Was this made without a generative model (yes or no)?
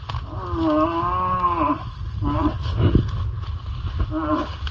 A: yes